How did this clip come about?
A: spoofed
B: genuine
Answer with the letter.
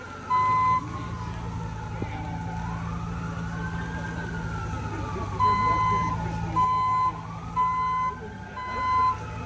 B